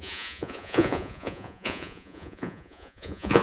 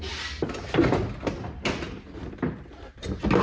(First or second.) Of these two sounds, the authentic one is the second